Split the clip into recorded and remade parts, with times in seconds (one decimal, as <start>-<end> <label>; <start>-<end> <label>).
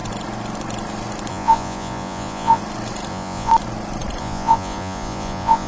0.0-1.3 recorded; 1.3-2.6 remade; 2.6-3.1 recorded; 3.1-3.5 remade; 3.5-4.2 recorded; 4.2-5.7 remade